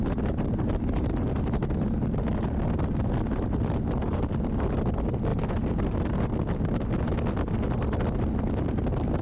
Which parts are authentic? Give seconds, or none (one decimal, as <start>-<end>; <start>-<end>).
0.0-9.2